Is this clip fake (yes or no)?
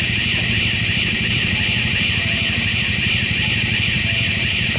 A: yes